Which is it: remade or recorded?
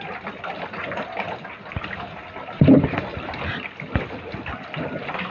recorded